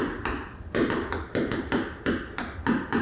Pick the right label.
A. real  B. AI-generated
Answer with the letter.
A